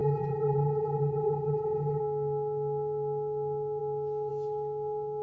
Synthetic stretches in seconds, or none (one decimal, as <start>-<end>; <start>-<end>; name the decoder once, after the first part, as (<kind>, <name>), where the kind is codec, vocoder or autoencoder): 0.0-2.0 (vocoder, HiFi-GAN)